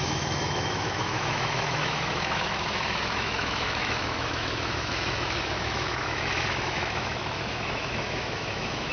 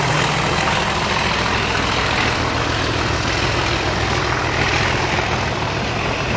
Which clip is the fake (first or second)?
first